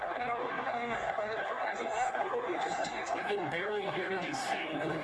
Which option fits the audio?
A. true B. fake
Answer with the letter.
B